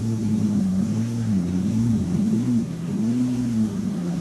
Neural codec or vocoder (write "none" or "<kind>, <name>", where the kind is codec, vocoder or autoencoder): codec, SNAC